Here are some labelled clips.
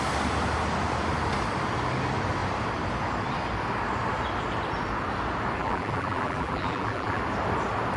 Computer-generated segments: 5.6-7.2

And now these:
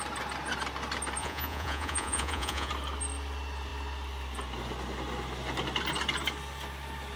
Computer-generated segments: 1.2-2.7

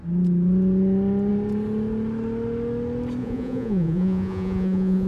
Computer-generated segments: 3.2-5.1

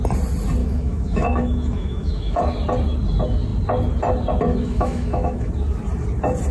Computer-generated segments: 0.6-2.4; 4.5-5.5

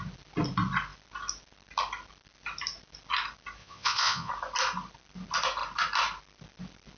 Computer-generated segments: 3.6-4.3

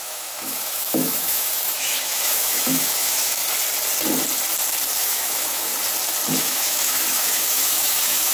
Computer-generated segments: 0.0-3.4; 5.0-5.7; 6.4-8.3